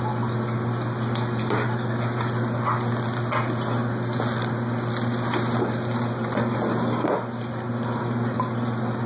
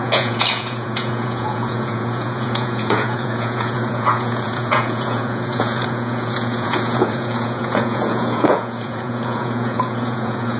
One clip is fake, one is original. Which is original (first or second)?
first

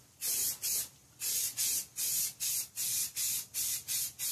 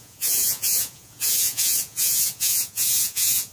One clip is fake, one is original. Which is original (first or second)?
first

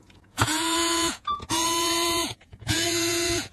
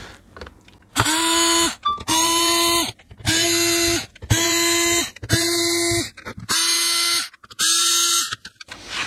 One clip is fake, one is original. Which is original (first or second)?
second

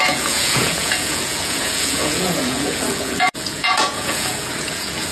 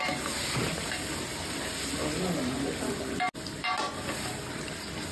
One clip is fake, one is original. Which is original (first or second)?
second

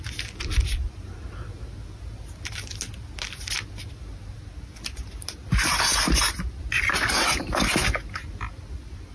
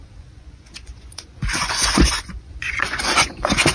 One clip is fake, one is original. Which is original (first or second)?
first